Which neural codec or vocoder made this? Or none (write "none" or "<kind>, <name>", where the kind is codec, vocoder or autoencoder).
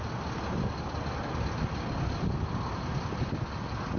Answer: none